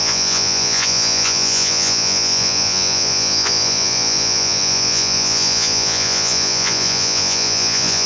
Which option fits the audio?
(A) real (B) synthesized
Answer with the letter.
B